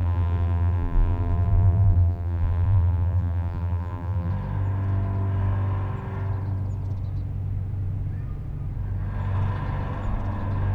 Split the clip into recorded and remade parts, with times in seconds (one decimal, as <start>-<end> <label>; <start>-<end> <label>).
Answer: 0.0-4.3 remade; 4.3-10.7 recorded